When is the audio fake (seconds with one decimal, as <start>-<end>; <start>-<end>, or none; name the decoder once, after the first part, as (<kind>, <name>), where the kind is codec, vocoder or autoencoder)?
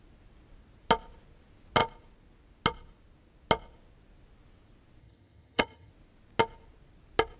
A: 5.0-5.9 (vocoder, HiFi-GAN)